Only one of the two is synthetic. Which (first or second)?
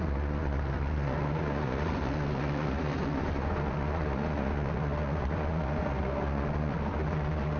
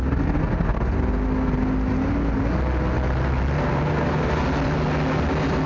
first